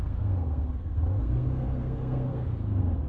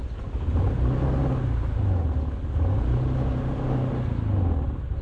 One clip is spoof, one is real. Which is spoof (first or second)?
first